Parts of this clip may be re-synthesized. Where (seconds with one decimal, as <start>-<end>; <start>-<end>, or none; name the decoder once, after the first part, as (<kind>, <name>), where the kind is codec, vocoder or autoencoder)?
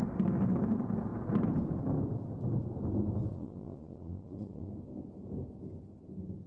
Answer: 3.3-4.7 (vocoder, Vocos)